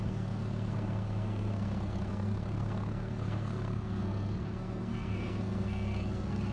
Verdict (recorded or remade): remade